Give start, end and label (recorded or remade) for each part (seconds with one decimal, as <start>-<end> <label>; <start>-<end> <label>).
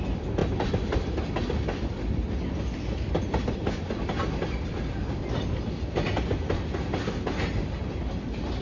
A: 0.0-8.6 recorded